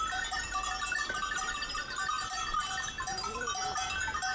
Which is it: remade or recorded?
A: remade